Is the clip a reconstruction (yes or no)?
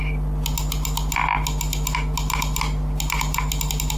no